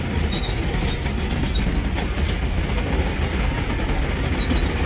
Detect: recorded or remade recorded